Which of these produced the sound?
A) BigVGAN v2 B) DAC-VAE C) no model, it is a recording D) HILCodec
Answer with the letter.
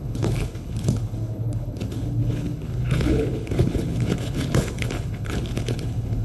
D